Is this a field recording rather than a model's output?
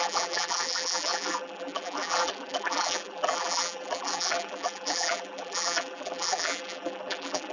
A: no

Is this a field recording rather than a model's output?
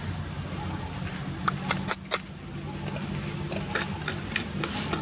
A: yes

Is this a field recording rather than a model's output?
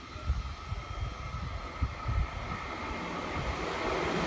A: yes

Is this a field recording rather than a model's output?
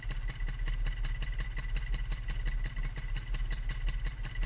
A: yes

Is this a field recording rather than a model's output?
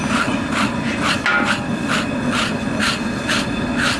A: yes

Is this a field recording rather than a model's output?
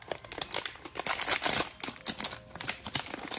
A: no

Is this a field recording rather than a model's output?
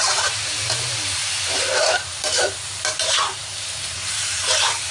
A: no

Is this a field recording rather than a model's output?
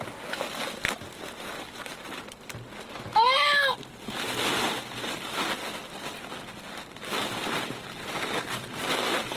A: yes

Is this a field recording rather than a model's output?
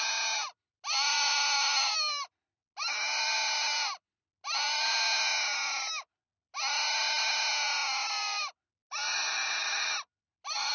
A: yes